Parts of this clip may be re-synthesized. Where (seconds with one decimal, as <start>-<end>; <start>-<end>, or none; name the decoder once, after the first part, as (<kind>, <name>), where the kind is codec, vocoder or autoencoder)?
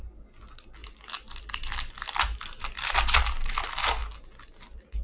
none